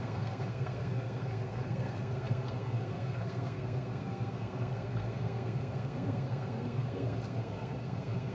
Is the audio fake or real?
fake